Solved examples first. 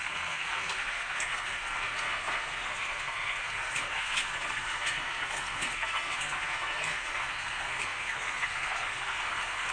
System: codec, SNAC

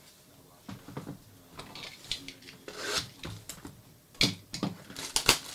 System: none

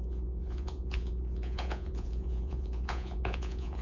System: vocoder, Vocos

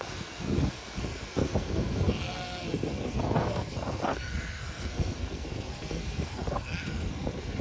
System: codec, SNAC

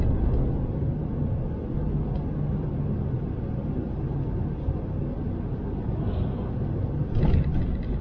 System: none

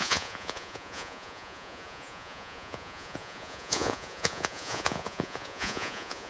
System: vocoder, Vocos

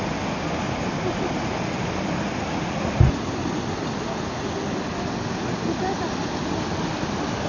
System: none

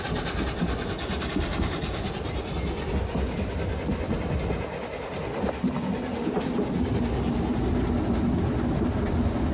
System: none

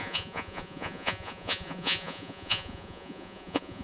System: vocoder, Vocos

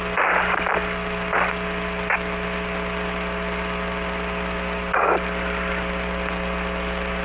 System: none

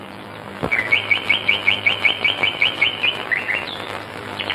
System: vocoder, BigVGAN v2